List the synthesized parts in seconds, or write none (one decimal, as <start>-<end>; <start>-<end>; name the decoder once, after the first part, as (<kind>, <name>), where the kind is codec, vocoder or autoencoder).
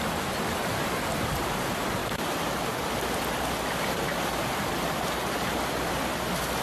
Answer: 2.0-2.6 (vocoder, BigVGAN v2)